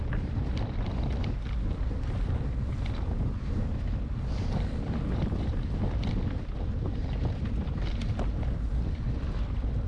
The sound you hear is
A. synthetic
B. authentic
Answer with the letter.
A